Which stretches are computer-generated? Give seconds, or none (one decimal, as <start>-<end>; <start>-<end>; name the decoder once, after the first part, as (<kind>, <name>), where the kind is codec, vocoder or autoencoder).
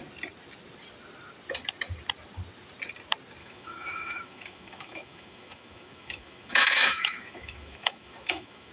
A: 3.4-8.7 (autoencoder, DAC-VAE)